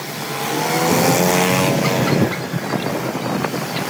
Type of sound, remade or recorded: recorded